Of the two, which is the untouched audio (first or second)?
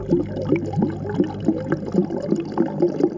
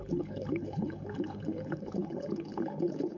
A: first